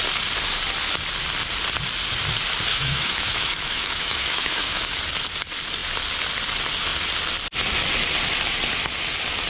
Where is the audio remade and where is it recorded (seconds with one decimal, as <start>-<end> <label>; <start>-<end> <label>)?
0.0-2.7 recorded; 2.7-5.0 remade; 5.0-9.5 recorded